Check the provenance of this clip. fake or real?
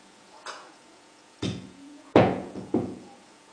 fake